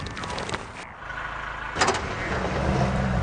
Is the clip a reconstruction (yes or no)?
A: no